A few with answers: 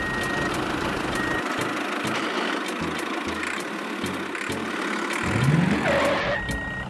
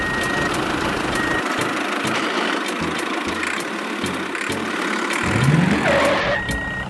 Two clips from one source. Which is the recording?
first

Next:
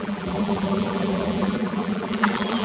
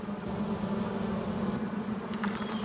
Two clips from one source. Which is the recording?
second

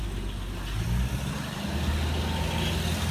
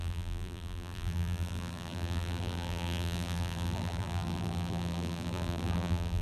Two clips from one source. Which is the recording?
first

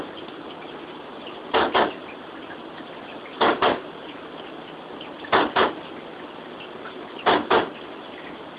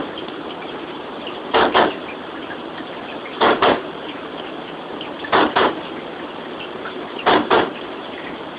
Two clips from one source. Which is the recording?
first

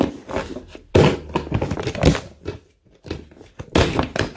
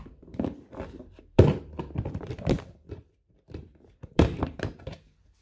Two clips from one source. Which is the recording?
first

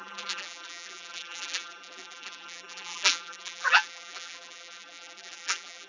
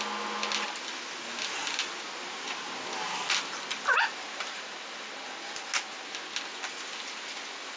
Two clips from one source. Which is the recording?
second